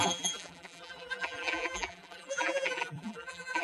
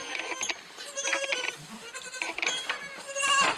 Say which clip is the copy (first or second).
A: first